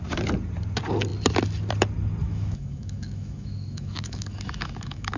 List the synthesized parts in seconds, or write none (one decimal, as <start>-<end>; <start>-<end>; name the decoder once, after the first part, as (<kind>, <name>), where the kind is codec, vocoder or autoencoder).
2.2-5.2 (autoencoder, DAC-VAE)